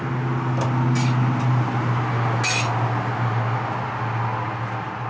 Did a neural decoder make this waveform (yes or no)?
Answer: no